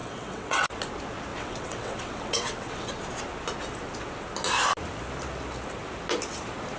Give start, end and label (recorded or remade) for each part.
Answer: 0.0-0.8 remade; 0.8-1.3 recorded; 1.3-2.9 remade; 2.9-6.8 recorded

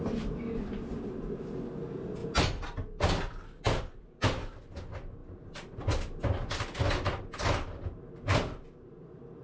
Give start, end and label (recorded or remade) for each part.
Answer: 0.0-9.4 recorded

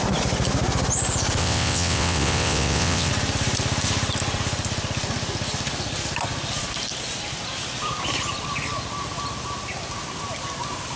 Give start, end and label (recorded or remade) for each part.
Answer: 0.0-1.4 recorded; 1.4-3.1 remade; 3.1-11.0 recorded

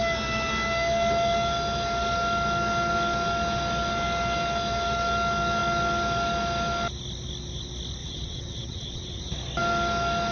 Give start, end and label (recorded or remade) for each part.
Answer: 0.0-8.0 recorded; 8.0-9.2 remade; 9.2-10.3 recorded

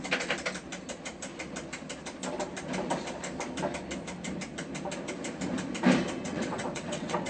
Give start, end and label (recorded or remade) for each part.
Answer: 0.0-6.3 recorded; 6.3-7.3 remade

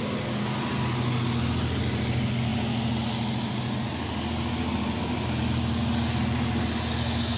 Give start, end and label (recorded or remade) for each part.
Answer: 0.0-7.4 recorded

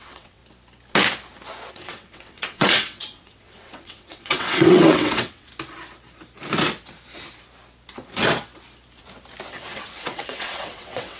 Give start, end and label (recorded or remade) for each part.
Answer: 0.0-0.4 remade; 0.4-1.7 recorded; 1.7-5.5 remade; 5.5-9.5 recorded; 9.5-11.2 remade

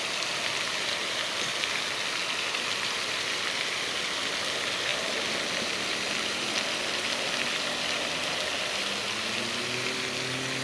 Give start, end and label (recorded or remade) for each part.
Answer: 0.0-10.6 recorded